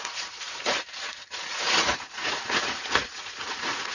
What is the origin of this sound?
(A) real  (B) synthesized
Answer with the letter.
B